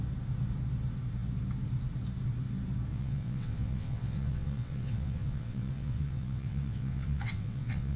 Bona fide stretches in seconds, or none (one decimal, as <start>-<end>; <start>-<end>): 0.0-2.9